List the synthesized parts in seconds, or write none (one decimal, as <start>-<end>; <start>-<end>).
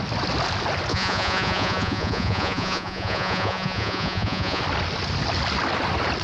0.9-4.6